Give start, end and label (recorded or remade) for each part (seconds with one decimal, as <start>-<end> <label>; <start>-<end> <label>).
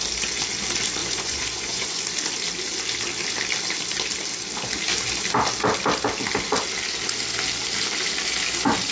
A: 0.0-1.0 recorded; 1.0-2.0 remade; 2.0-8.9 recorded